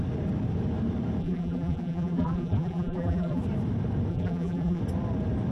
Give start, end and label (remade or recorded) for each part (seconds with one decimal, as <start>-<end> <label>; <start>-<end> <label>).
0.0-1.2 recorded; 1.2-3.4 remade; 3.4-4.1 recorded; 4.1-4.8 remade; 4.8-5.5 recorded